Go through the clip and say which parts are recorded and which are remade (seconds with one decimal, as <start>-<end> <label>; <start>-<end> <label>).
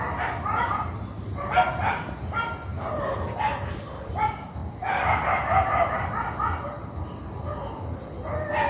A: 0.0-8.7 recorded